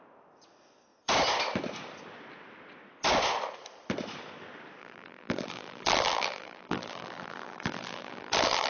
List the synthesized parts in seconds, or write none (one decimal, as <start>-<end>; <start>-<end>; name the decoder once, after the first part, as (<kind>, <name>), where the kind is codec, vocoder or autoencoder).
4.8-8.7 (vocoder, BigVGAN v2)

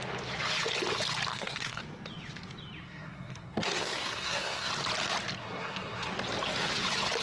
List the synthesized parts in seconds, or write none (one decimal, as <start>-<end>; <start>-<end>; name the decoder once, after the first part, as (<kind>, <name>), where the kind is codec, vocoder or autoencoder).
1.3-1.8 (codec, SNAC); 2.8-4.7; 5.4-6.1

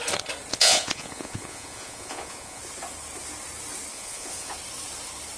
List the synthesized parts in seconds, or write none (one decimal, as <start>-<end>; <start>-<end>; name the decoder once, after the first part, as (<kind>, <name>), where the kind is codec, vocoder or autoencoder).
0.5-2.6 (vocoder, Vocos); 3.9-4.5